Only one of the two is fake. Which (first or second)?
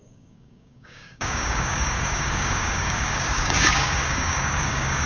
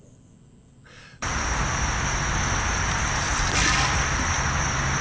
first